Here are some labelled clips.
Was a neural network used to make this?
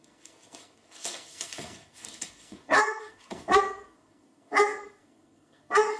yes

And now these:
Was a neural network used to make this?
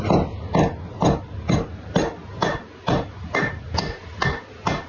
no